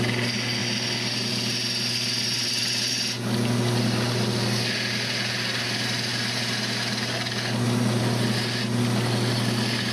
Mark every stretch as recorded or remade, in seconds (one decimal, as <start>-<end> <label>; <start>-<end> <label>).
0.0-9.9 recorded